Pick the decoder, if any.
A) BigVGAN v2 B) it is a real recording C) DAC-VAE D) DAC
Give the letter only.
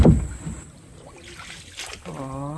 B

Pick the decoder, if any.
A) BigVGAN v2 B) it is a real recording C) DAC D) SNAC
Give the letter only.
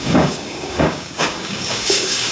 C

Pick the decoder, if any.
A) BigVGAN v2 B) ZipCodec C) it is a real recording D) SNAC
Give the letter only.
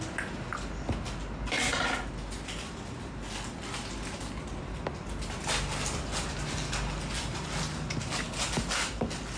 C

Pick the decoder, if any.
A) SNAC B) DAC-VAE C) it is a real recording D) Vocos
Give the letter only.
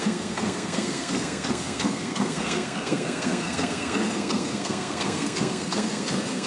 A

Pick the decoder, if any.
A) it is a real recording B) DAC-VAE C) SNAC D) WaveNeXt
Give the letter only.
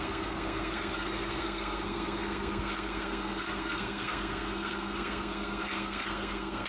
C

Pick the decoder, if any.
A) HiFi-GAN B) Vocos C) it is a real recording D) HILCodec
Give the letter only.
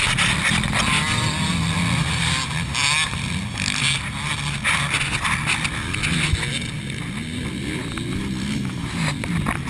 C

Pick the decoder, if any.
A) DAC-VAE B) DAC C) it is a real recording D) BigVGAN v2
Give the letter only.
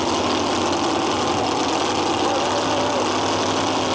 C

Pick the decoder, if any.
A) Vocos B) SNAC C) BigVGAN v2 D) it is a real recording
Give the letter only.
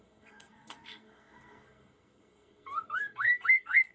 B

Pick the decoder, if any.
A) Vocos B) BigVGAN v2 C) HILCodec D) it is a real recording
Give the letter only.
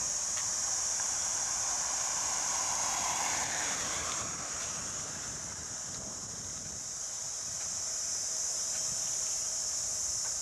B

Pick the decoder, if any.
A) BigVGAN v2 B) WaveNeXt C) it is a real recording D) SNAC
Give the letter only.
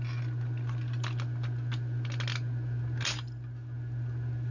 C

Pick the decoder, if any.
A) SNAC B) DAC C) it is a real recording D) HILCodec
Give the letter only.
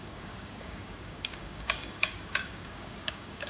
B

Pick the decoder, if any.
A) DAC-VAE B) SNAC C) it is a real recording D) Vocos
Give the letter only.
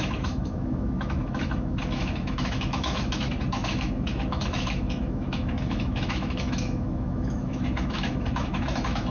A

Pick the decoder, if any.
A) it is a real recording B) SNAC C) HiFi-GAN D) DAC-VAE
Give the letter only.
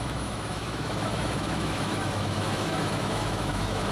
D